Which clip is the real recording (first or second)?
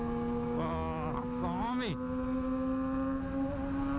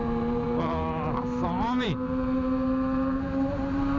first